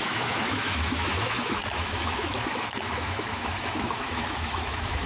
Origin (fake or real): fake